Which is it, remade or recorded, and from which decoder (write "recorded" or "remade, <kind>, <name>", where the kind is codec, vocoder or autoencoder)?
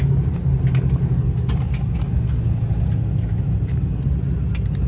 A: recorded